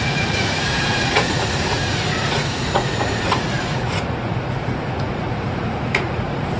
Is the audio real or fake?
fake